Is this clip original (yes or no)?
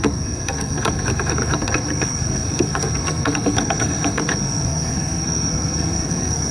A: no